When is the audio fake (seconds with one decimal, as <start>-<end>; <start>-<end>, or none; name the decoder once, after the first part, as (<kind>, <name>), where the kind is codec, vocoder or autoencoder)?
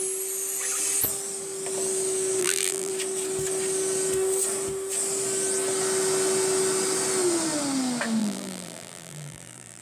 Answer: 2.4-2.9 (vocoder, BigVGAN v2); 8.2-9.8